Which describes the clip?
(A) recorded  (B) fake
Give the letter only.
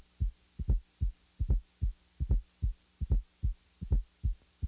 A